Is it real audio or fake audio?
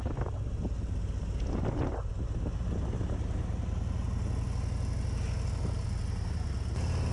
real